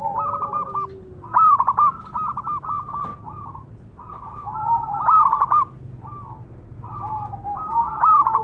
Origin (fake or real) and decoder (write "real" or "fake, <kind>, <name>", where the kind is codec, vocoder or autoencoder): real